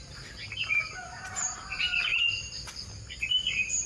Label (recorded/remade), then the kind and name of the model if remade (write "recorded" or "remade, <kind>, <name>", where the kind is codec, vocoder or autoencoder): recorded